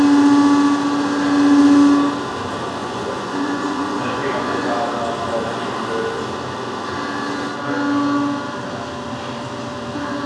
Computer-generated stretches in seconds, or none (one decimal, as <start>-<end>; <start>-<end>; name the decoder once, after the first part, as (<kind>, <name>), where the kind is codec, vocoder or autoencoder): 2.8-4.7 (vocoder, Vocos)